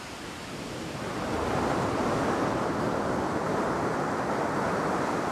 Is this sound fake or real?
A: real